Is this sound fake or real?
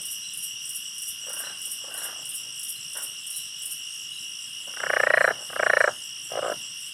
real